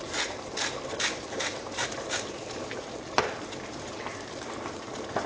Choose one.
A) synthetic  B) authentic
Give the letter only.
A